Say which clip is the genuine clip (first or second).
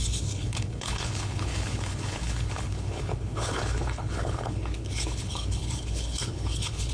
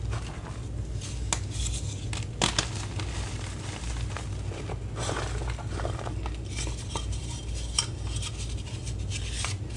second